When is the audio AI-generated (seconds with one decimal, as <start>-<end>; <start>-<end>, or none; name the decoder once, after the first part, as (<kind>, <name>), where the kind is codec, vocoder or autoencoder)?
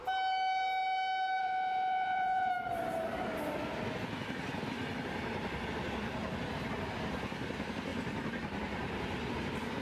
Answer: 1.4-2.5 (vocoder, Vocos)